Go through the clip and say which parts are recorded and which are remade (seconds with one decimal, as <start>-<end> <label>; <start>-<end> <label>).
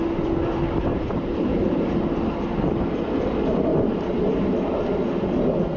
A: 0.0-0.9 recorded; 0.9-2.2 remade; 2.2-3.7 recorded; 3.7-4.8 remade; 4.8-5.8 recorded